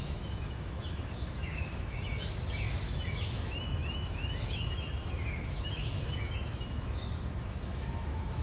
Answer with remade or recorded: remade